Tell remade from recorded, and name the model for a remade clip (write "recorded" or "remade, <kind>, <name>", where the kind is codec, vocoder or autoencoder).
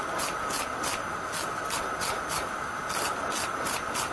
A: recorded